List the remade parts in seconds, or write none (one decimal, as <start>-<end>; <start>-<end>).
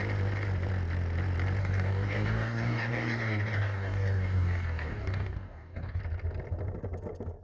1.6-6.0